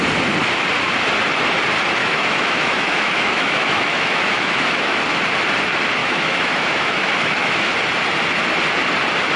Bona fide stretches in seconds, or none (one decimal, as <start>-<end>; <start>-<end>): 0.0-2.0; 5.0-6.0; 7.7-9.4